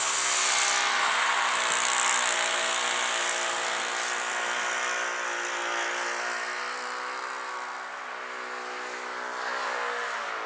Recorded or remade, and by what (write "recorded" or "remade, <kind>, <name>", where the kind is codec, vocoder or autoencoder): recorded